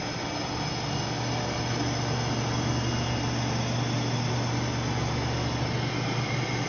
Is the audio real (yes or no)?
yes